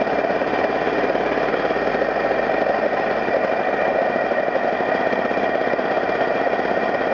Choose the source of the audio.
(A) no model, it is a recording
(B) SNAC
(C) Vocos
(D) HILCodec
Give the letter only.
A